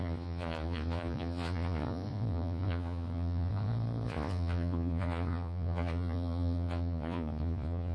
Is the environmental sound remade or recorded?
remade